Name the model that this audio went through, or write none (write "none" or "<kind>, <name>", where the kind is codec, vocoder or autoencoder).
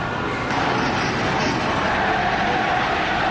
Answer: none